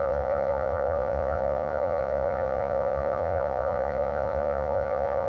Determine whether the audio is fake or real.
fake